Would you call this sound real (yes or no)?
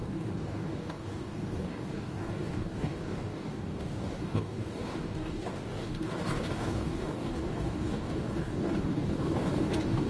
no